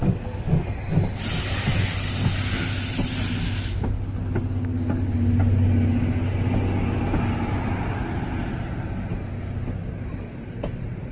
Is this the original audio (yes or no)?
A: yes